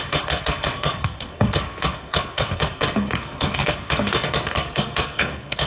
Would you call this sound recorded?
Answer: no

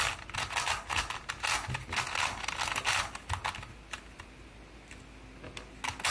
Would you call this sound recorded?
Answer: yes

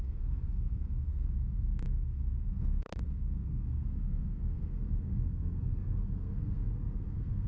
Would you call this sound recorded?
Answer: no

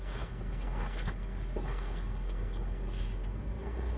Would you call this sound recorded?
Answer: no